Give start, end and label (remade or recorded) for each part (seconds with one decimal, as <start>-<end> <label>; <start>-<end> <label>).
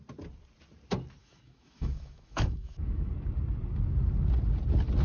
0.0-1.2 recorded; 1.2-3.1 remade; 3.1-5.0 recorded